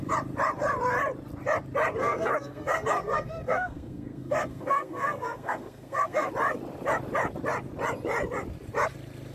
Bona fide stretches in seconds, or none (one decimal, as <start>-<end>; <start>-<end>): 0.0-2.0; 6.3-9.3

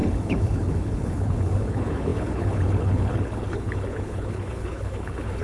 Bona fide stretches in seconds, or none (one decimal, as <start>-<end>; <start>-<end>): none

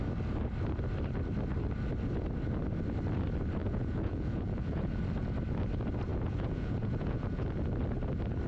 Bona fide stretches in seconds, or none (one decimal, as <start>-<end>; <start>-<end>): 0.0-3.6; 5.0-6.1; 7.6-8.5

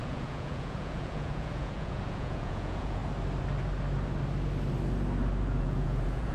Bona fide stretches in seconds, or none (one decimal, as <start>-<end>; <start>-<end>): 3.0-5.6